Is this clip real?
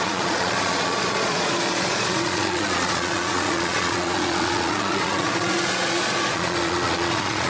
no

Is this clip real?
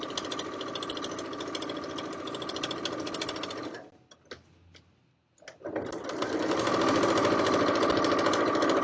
yes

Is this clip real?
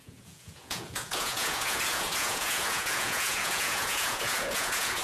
no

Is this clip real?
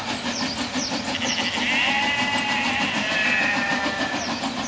yes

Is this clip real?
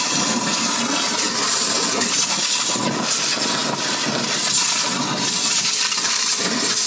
yes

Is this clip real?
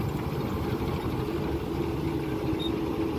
yes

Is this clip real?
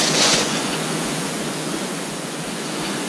no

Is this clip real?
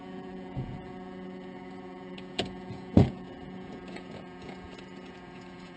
no